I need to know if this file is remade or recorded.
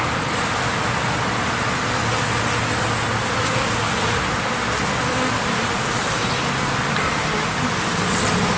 recorded